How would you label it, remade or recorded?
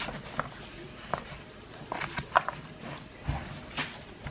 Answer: recorded